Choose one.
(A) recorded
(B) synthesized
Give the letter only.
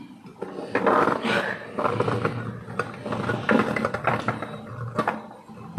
A